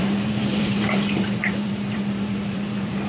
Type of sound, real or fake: fake